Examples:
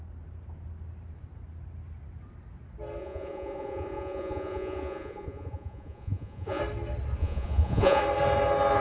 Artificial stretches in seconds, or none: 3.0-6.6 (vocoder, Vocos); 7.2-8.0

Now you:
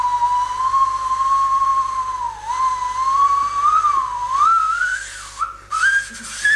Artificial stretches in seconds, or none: none

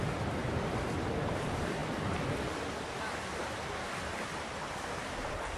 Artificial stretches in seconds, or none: none

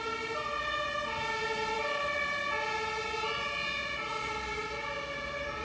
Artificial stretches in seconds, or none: 4.1-4.6 (vocoder, BigVGAN v2)